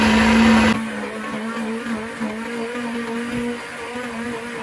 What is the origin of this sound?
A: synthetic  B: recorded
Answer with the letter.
B